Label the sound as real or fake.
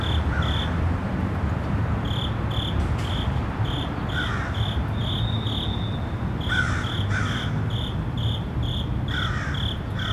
real